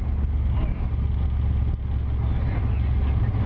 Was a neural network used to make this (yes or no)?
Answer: no